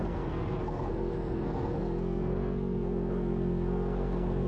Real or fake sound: fake